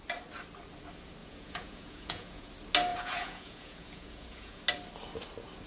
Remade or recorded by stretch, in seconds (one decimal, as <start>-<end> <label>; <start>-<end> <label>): 0.0-1.2 recorded; 1.2-2.5 remade; 2.5-2.9 recorded; 2.9-4.6 remade; 4.6-5.7 recorded